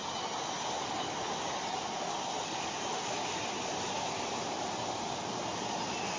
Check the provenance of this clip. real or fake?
real